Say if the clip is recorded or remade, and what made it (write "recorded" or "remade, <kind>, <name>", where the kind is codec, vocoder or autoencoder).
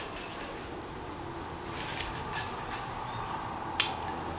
recorded